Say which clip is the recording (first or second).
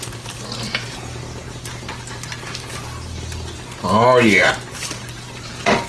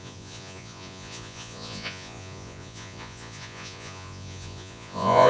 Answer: first